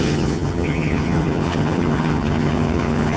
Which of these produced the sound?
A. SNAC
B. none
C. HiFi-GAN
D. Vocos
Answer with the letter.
C